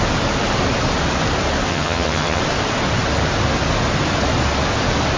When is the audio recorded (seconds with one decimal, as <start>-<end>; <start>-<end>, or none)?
0.0-1.7; 2.4-5.2